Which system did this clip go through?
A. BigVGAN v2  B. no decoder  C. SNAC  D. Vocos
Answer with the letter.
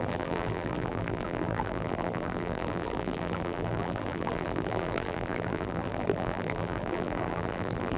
A